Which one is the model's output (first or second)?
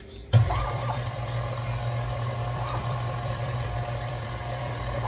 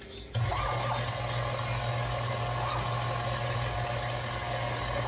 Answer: first